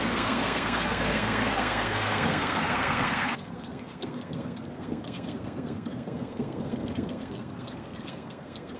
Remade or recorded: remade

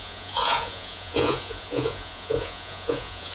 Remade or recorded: remade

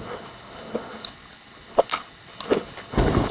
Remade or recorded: remade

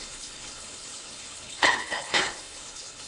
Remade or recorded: remade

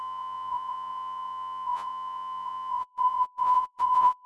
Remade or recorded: remade